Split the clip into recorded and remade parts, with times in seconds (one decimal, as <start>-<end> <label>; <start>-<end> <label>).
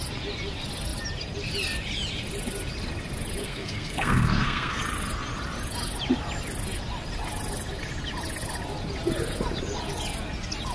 0.0-3.4 recorded; 3.4-4.8 remade; 4.8-10.7 recorded